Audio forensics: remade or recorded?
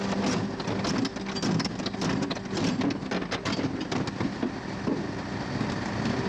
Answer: recorded